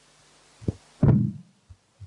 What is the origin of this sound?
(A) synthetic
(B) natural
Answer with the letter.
B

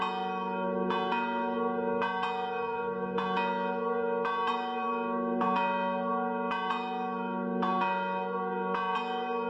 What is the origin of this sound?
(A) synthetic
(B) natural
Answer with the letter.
A